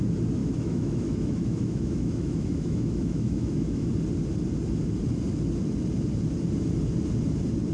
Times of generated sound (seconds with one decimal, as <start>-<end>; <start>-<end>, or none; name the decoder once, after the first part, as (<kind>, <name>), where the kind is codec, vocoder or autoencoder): 0.4-3.9 (autoencoder, DAC-VAE)